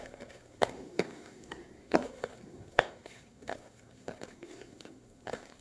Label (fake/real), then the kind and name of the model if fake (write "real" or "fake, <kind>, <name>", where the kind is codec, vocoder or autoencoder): fake, codec, SNAC